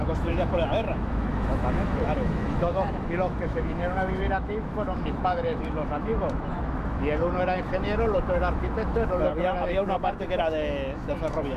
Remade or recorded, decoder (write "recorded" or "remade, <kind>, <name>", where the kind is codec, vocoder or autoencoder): remade, autoencoder, DAC-VAE